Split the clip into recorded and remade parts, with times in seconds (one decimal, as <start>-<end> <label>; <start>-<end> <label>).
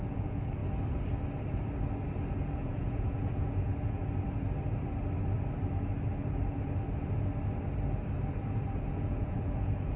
0.0-0.6 remade; 0.6-2.3 recorded; 2.3-4.0 remade; 4.0-8.9 recorded; 8.9-10.0 remade